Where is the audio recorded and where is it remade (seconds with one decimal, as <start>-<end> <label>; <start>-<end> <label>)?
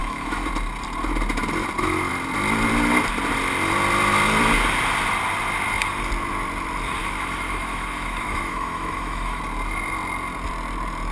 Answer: 0.0-0.5 remade; 0.5-7.0 recorded; 7.0-9.4 remade; 9.4-11.1 recorded